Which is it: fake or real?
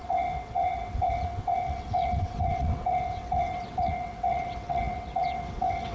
fake